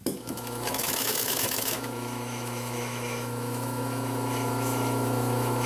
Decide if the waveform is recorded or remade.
remade